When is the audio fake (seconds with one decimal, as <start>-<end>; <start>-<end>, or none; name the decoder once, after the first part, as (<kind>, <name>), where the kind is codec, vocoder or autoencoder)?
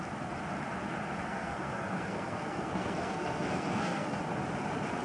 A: 1.2-4.2 (codec, SNAC)